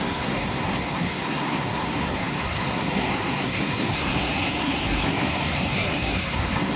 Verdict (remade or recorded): remade